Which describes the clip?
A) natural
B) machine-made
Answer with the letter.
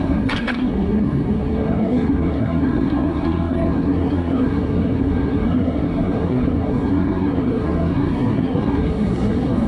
B